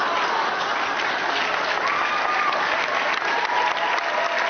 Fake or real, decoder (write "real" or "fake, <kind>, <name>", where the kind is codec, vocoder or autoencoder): real